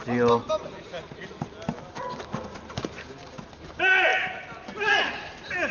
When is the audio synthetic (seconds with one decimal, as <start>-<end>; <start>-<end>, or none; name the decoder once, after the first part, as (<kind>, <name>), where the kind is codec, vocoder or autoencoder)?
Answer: none